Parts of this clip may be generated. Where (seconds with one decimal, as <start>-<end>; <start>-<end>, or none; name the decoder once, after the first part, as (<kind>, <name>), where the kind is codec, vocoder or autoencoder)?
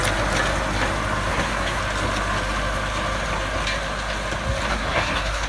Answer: 1.3-1.8 (codec, SNAC); 4.7-5.5